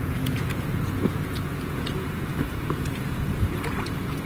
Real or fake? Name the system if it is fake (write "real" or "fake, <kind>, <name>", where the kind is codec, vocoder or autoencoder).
fake, vocoder, Vocos